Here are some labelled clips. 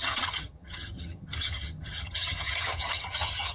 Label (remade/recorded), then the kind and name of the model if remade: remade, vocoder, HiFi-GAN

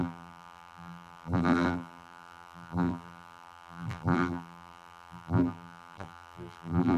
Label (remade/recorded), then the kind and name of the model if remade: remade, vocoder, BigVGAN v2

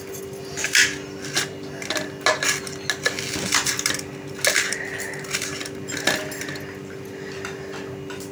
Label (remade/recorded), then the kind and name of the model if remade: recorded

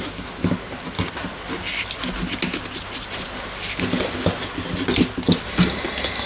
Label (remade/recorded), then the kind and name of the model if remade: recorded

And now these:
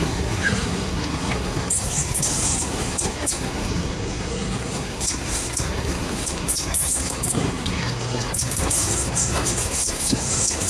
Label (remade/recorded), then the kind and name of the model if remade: remade, codec, SNAC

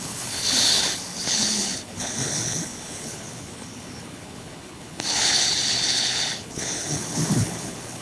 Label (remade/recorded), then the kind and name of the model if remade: remade, codec, HILCodec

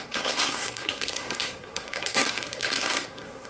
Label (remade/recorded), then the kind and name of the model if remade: remade, codec, SNAC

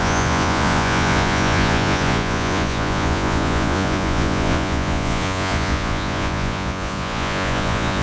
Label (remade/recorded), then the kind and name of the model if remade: remade, vocoder, Vocos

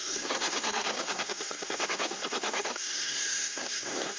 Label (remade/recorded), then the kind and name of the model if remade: remade, codec, SNAC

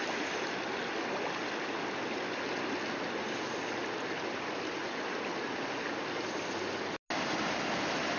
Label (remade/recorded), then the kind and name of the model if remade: recorded